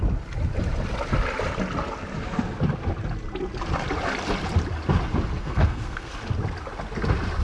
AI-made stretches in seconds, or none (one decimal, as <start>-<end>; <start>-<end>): 5.4-6.1